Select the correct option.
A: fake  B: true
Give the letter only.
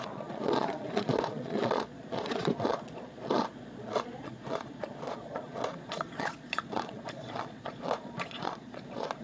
A